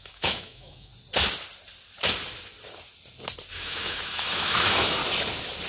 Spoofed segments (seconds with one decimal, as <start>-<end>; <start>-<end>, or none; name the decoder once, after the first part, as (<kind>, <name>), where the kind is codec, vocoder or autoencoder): 0.0-0.9 (autoencoder, DAC-VAE); 3.5-5.0